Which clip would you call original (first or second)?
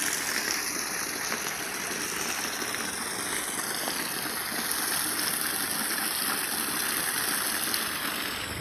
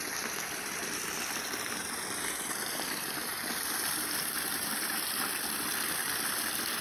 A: first